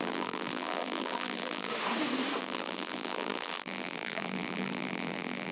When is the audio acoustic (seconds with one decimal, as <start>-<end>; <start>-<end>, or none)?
1.7-2.4